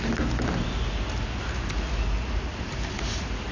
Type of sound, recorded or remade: recorded